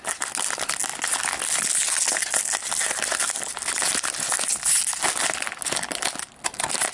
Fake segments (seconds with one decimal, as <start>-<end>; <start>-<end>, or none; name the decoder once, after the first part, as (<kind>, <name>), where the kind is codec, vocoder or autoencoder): none